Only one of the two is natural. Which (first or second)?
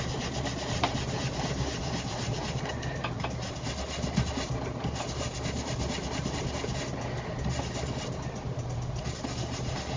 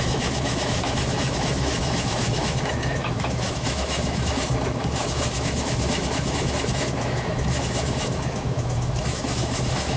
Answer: first